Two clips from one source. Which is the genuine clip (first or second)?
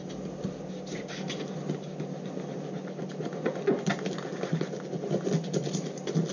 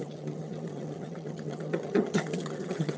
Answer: first